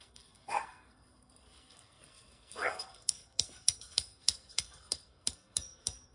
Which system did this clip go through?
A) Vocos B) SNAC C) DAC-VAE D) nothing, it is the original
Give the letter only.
B